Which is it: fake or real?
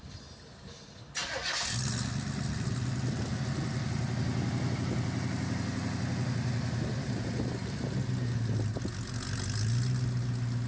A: real